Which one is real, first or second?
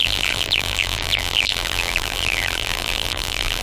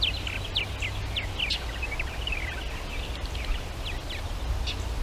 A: second